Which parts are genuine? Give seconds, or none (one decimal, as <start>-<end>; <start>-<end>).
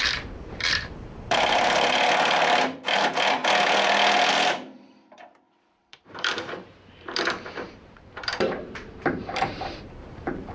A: 3.4-4.3